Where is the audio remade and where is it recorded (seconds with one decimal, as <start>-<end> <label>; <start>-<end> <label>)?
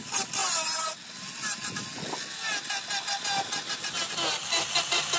0.0-5.2 recorded